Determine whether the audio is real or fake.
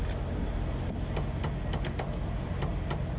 real